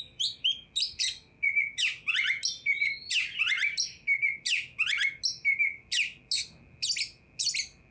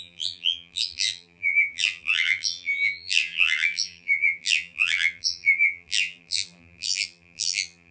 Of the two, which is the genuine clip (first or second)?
first